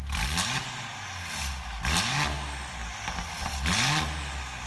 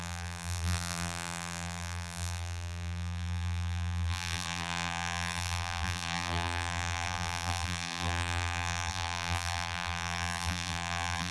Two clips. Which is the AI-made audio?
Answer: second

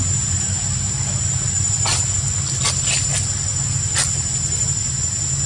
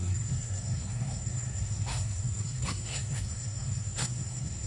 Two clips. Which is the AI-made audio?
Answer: second